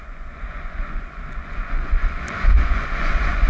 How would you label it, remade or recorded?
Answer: remade